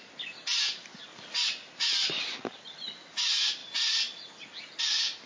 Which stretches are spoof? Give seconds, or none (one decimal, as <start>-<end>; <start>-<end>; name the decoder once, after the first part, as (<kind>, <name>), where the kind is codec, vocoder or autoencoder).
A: none